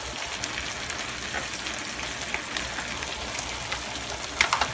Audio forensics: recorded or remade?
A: recorded